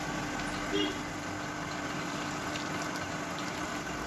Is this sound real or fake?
real